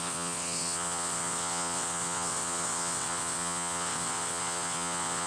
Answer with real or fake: fake